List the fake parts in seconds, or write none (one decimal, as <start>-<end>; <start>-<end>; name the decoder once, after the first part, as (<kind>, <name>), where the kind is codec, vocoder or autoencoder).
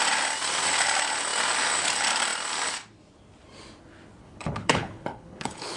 4.2-5.8 (codec, HILCodec)